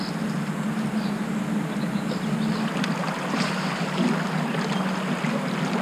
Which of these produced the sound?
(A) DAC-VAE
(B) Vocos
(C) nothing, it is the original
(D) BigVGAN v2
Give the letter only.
C